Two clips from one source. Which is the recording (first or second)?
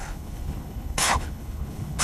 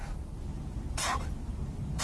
second